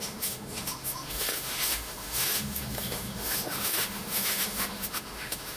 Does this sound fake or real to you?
fake